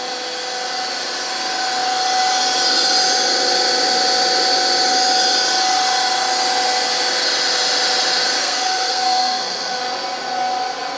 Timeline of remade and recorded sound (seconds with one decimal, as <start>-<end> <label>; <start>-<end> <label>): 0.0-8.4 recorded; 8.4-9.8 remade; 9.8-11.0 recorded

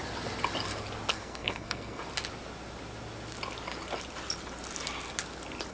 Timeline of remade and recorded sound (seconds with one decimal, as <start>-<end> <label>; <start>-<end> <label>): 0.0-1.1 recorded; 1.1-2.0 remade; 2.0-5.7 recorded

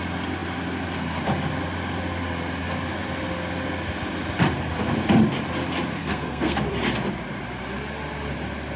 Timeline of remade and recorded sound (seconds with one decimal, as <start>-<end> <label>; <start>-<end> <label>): 0.0-6.0 recorded; 6.0-6.7 remade; 6.7-8.8 recorded

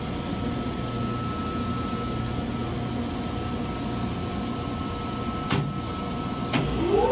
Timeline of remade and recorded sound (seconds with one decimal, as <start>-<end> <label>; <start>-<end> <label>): 0.0-7.1 recorded

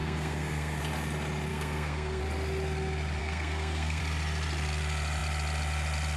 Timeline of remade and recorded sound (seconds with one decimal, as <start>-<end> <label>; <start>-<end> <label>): 0.0-0.8 remade; 0.8-1.5 recorded; 1.5-2.2 remade; 2.2-3.2 recorded; 3.2-4.0 remade; 4.0-6.2 recorded

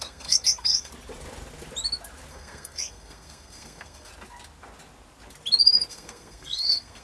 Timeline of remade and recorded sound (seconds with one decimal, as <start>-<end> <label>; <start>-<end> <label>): 0.0-0.9 remade; 0.9-2.3 recorded; 2.3-4.1 remade; 4.1-5.9 recorded; 5.9-7.0 remade

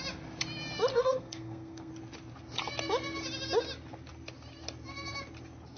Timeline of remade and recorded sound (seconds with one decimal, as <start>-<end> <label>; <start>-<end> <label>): 0.0-0.9 recorded; 0.9-1.9 remade; 1.9-5.8 recorded

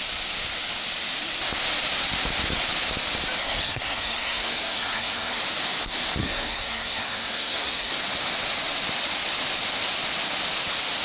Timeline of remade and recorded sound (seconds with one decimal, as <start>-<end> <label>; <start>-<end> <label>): 0.0-3.4 recorded; 3.4-5.4 remade; 5.4-6.2 recorded; 6.2-7.9 remade; 7.9-11.0 recorded